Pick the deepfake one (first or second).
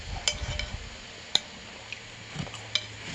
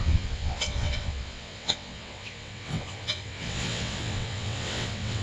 second